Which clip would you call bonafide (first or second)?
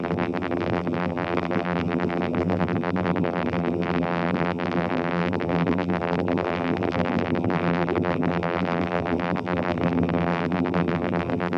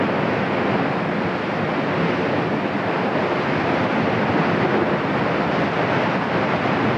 second